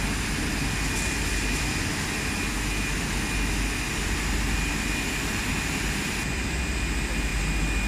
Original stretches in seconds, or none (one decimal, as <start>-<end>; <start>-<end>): 0.0-7.9